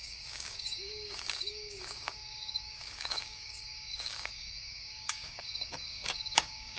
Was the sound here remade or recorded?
remade